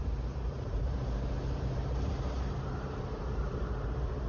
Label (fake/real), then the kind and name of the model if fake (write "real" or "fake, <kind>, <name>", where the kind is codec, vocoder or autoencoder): fake, vocoder, BigVGAN v2